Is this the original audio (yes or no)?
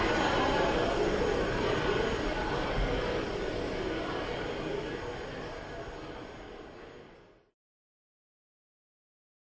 yes